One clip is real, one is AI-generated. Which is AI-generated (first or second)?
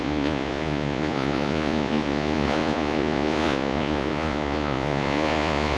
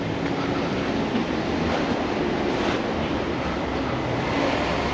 first